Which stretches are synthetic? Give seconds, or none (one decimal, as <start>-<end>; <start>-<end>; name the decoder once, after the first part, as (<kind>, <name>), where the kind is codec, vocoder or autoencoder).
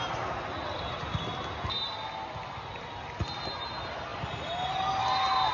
none